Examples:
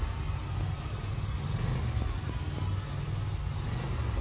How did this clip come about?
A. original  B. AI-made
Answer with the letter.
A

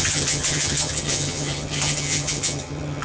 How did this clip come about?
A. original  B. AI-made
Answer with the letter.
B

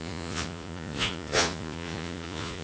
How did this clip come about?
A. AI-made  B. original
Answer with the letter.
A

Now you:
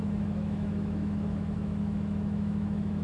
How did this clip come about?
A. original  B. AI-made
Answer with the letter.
B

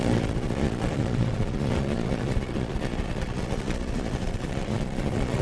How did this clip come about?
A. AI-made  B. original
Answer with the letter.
A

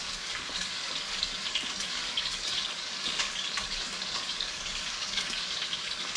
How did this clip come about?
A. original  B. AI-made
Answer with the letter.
B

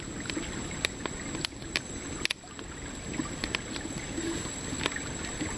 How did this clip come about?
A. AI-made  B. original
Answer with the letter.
B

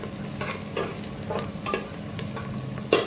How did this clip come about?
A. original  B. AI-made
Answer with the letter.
A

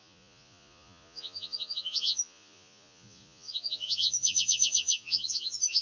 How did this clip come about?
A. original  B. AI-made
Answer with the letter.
B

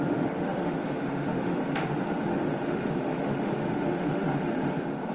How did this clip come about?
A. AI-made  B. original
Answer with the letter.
A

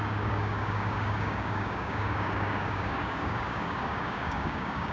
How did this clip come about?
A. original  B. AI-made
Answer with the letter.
B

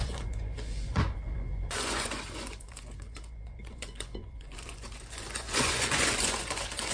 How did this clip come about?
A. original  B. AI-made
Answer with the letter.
B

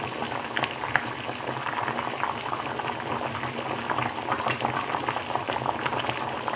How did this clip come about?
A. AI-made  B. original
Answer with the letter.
B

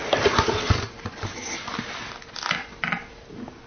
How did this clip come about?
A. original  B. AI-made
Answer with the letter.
A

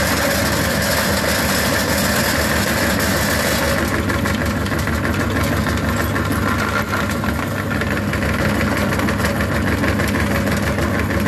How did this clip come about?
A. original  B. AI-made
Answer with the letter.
A